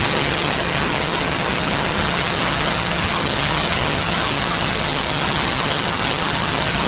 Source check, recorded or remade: remade